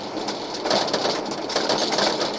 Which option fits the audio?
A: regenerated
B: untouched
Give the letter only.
B